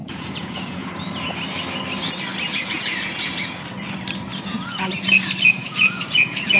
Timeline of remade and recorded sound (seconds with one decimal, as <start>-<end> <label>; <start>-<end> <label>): 0.0-0.9 remade; 0.9-2.5 recorded; 2.5-3.5 remade; 3.5-4.3 recorded; 4.3-4.9 remade; 4.9-5.6 recorded; 5.6-6.6 remade